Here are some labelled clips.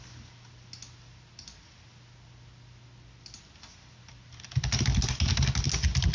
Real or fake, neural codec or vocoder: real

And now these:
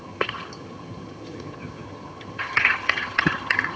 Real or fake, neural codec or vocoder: fake, vocoder, HiFi-GAN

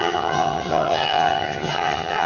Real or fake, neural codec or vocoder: fake, vocoder, HiFi-GAN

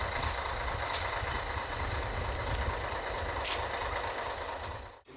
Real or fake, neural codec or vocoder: real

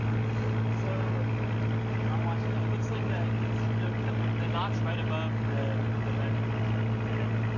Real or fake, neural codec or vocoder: real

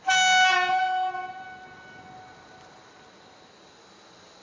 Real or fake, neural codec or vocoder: real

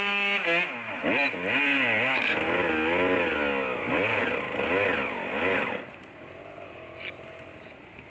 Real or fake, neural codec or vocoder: real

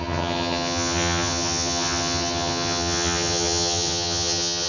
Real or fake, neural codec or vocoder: fake, vocoder, HiFi-GAN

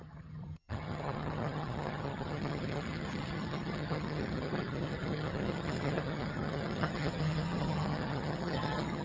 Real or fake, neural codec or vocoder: fake, vocoder, HiFi-GAN